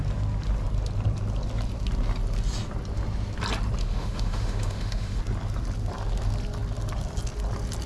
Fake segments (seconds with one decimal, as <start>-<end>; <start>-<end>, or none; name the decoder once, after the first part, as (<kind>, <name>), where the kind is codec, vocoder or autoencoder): 3.8-5.2 (autoencoder, DAC-VAE)